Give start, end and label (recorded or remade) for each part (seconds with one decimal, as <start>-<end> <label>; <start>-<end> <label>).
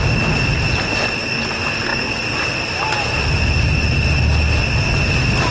0.0-5.5 recorded